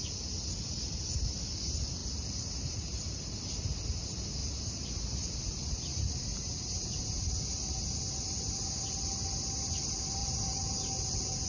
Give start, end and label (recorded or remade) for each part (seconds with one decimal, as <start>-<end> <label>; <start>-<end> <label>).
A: 0.0-2.0 recorded; 2.0-3.3 remade; 3.3-4.4 recorded; 4.4-4.9 remade; 4.9-6.3 recorded; 6.3-7.7 remade; 7.7-10.2 recorded; 10.2-11.5 remade